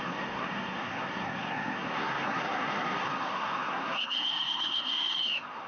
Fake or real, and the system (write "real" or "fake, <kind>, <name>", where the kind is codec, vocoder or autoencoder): fake, codec, SNAC